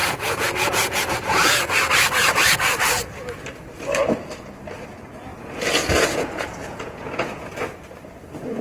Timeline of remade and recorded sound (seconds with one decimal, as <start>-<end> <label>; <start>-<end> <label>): 0.0-1.9 remade; 1.9-5.3 recorded; 5.3-7.6 remade; 7.6-8.6 recorded

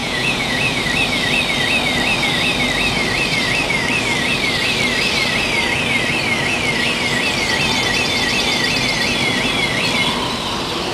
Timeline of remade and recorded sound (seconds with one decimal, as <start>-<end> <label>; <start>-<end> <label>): 0.0-0.8 remade; 0.8-10.9 recorded

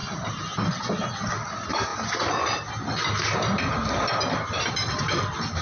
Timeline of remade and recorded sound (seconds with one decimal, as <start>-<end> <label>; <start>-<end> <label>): 0.0-5.6 recorded

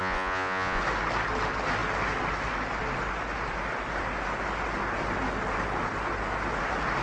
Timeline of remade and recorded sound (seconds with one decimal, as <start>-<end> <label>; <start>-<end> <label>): 0.0-0.8 remade; 0.8-7.0 recorded

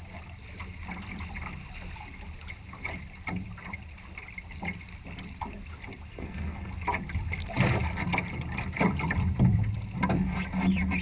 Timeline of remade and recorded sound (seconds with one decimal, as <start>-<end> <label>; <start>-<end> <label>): 0.0-6.1 recorded; 6.1-6.7 remade; 6.7-11.0 recorded